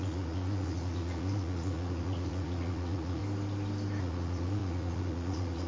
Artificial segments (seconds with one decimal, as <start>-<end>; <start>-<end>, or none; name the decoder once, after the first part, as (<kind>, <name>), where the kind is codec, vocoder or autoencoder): 0.0-3.2 (vocoder, Vocos); 4.0-5.7